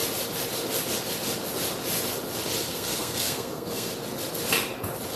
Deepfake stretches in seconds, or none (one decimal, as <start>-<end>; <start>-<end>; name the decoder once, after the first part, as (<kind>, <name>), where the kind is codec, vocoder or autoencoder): 2.7-3.9 (codec, SNAC)